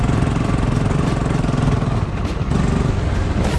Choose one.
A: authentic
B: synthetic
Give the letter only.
A